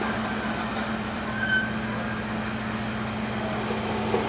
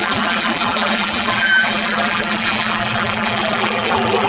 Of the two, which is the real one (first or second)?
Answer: first